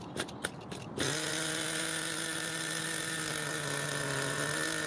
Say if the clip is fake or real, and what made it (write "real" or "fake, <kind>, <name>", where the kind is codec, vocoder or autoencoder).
real